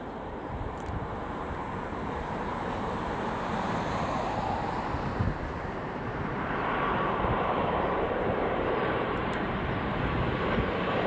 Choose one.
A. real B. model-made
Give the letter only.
B